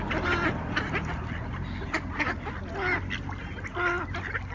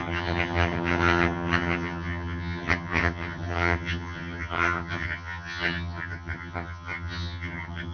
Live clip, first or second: first